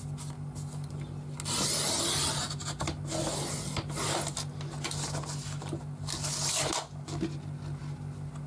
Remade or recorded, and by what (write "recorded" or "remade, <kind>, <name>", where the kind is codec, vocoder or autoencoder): recorded